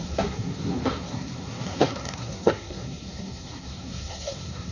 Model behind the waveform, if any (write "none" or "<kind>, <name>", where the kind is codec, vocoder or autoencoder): codec, SNAC